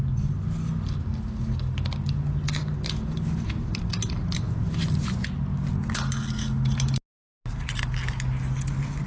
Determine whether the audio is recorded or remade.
recorded